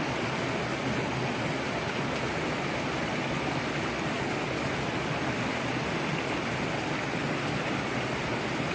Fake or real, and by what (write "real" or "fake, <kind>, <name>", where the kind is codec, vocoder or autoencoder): real